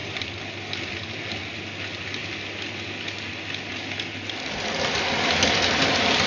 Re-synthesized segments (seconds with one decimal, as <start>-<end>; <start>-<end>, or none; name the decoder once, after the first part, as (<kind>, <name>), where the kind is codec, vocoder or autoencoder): none